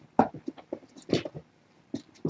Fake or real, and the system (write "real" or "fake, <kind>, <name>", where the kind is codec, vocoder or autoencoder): real